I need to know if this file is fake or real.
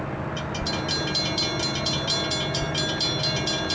real